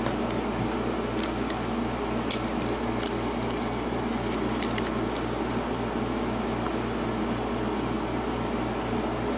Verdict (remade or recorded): recorded